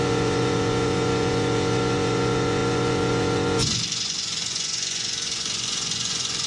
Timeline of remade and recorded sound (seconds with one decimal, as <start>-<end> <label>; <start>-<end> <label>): 0.0-6.5 remade